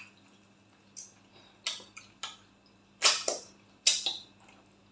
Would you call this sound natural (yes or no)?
yes